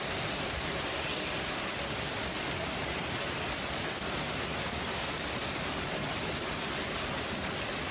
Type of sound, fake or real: real